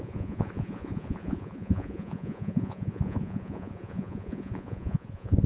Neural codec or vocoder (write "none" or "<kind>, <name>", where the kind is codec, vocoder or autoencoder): vocoder, Vocos